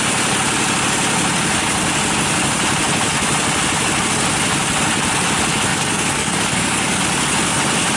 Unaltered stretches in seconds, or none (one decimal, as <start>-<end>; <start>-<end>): 0.0-5.7; 7.0-8.0